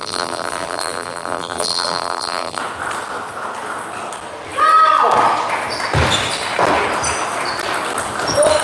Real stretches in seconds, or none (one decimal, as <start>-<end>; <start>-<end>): 2.6-8.6